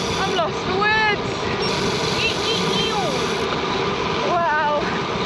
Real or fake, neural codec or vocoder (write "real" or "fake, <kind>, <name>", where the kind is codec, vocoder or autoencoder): real